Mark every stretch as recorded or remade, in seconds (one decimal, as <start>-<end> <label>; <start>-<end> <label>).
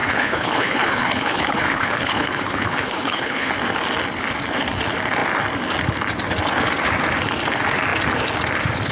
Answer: 0.0-3.5 remade; 3.5-8.9 recorded